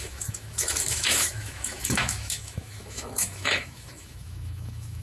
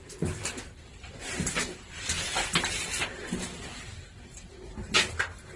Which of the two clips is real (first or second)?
second